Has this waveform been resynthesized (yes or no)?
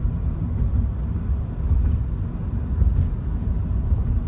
no